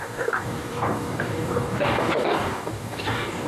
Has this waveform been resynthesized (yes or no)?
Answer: yes